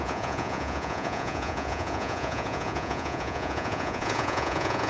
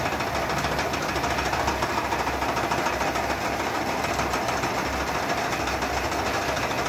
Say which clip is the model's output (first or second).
first